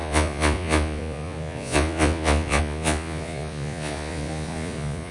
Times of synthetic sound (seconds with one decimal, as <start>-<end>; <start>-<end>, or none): 0.0-5.1